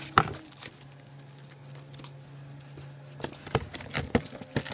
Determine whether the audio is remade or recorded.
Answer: recorded